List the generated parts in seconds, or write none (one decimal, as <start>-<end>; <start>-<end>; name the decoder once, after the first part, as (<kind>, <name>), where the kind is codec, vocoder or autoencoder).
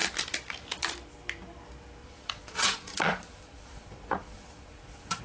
2.0-5.2 (vocoder, Vocos)